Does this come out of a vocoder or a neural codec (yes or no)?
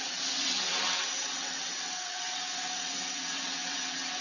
yes